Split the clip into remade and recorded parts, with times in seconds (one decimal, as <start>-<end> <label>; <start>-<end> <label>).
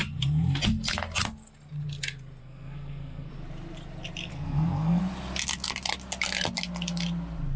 0.0-2.4 recorded; 2.4-3.3 remade; 3.3-4.3 recorded; 4.3-5.0 remade; 5.0-7.6 recorded